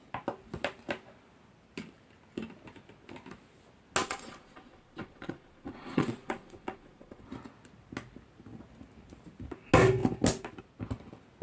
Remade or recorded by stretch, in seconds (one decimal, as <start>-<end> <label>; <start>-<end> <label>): 0.0-4.0 recorded; 4.0-7.3 remade; 7.3-11.4 recorded

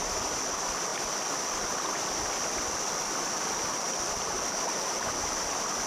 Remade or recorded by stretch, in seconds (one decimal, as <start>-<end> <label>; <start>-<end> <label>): 0.0-5.9 recorded